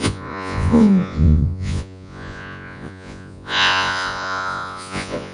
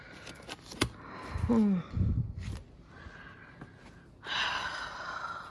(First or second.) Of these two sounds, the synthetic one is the first